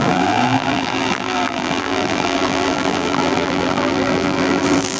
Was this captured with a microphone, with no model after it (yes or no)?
no